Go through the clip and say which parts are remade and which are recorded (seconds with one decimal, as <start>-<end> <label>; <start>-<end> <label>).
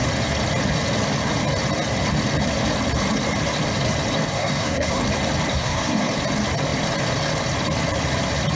0.0-4.3 recorded; 4.3-5.0 remade; 5.0-5.5 recorded; 5.5-6.1 remade; 6.1-8.6 recorded